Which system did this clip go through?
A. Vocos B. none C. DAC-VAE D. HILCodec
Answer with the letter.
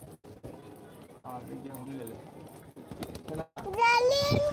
B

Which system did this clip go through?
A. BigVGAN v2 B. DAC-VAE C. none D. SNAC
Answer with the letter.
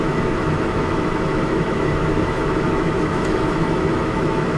B